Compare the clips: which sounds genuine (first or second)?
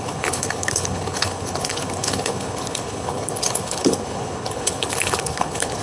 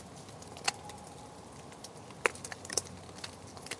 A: second